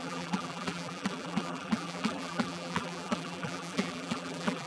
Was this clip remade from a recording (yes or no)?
yes